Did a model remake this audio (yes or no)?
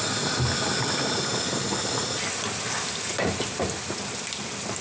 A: no